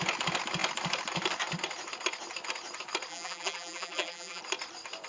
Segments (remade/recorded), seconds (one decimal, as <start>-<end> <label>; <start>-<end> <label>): 0.0-3.1 recorded; 3.1-4.4 remade; 4.4-5.1 recorded